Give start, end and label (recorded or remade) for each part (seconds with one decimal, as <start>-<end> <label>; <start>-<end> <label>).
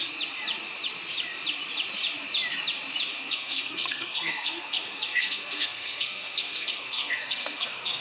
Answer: 0.0-3.1 recorded; 3.1-8.0 remade